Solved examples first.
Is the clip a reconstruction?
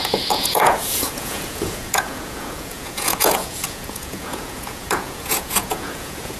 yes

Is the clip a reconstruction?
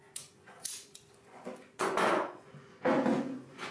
yes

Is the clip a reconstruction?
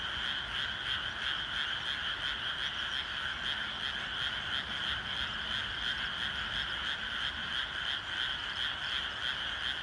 no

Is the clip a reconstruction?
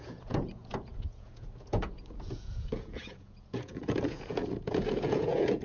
yes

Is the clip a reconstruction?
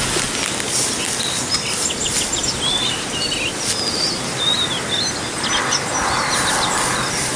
no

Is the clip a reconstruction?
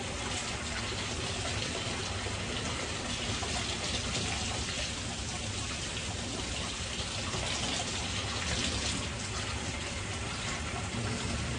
no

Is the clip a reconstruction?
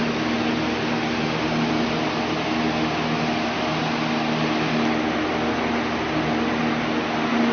no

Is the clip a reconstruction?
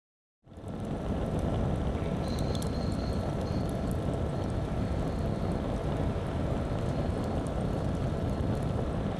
no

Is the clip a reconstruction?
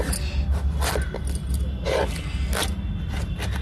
no